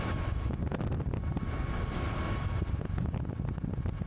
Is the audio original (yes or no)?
yes